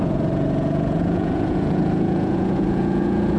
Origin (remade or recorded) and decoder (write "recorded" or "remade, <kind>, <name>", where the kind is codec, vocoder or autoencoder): remade, vocoder, Vocos